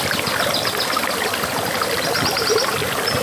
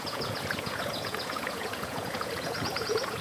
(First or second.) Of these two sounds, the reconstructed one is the second